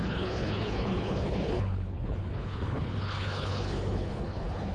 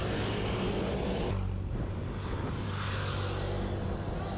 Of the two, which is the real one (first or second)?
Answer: second